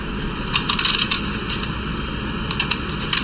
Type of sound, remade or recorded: recorded